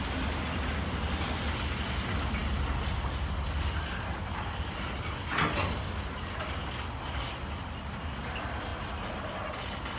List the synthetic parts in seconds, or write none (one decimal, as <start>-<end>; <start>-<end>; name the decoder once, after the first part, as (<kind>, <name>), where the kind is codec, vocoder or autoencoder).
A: none